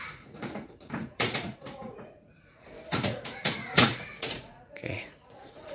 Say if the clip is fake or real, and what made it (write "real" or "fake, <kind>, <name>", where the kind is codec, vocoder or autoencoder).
fake, vocoder, Vocos